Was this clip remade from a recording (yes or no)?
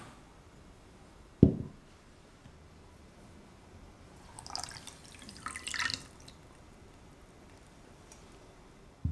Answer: no